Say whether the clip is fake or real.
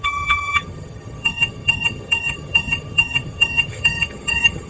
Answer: fake